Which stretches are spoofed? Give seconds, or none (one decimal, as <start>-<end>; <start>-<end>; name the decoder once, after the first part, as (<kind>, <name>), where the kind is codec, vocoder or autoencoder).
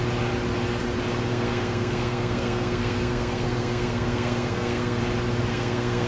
1.3-5.0 (codec, SNAC); 5.5-6.1